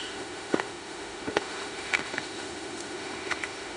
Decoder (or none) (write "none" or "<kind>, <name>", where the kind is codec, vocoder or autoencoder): autoencoder, DAC-VAE